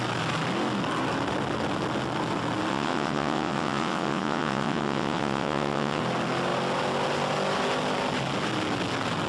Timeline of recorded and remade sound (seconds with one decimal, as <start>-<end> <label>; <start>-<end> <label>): 0.0-2.7 recorded; 2.7-6.0 remade; 6.0-9.3 recorded

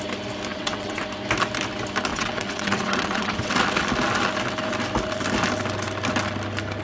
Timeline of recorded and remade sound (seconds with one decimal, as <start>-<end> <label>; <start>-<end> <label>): 0.0-0.5 recorded; 0.5-1.0 remade; 1.0-2.1 recorded; 2.1-3.5 remade; 3.5-6.8 recorded